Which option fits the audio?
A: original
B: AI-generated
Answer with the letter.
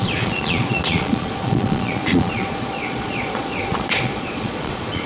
B